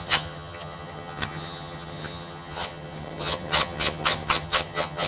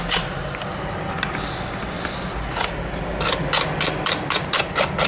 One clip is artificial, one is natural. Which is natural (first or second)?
second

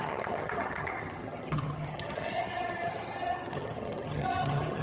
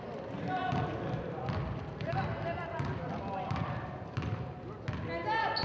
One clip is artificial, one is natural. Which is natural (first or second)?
second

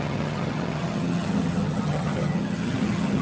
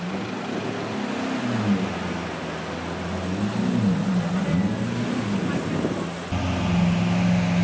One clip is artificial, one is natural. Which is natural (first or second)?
second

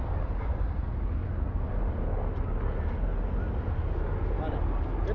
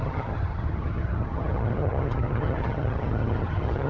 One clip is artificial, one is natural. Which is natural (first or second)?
first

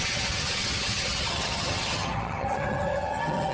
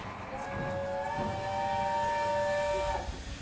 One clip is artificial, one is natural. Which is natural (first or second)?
second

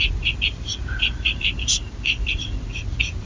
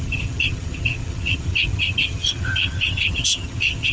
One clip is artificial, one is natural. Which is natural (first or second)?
first